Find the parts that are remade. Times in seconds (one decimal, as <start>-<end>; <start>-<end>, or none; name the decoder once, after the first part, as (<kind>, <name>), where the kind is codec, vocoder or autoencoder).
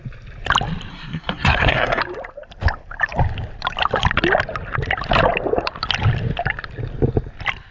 0.9-2.0 (codec, SNAC)